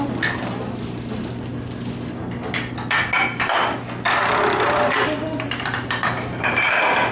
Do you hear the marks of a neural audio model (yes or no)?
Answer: no